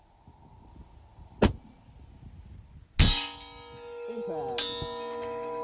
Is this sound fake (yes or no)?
no